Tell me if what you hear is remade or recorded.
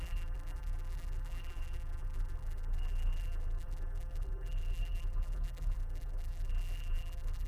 remade